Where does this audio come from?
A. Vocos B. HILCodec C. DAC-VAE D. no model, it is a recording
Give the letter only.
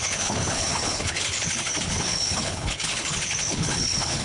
B